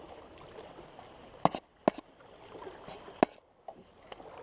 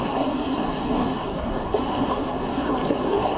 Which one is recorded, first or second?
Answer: first